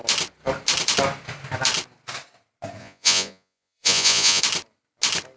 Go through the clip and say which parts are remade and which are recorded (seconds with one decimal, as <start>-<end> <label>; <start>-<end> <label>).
0.0-2.8 recorded; 2.8-4.4 remade; 4.4-5.4 recorded